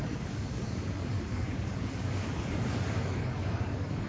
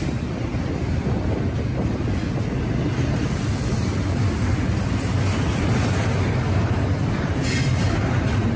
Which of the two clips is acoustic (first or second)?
second